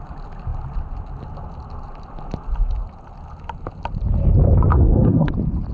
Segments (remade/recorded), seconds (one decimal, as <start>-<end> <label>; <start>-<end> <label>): 0.0-4.7 recorded; 4.7-5.3 remade; 5.3-5.7 recorded